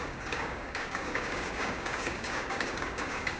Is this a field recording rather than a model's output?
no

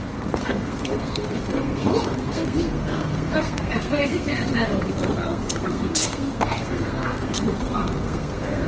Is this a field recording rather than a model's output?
no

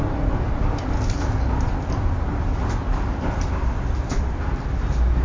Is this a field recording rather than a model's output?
yes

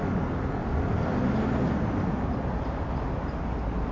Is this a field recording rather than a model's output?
yes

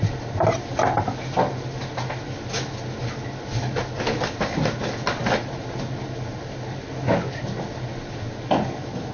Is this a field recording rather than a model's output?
yes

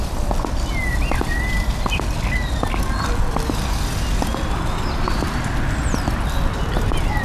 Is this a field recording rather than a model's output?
yes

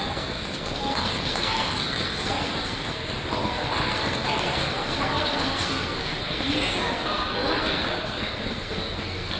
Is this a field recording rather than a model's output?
no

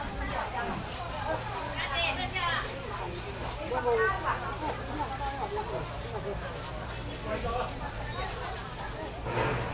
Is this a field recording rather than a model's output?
yes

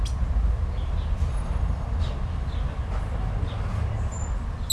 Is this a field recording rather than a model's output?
yes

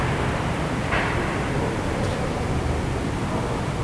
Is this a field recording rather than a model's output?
no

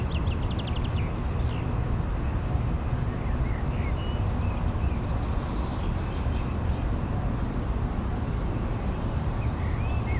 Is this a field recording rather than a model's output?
yes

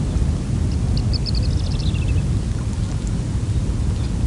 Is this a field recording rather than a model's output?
yes